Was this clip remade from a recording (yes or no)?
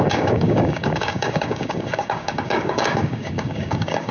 yes